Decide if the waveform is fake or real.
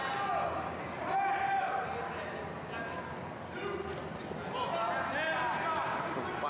real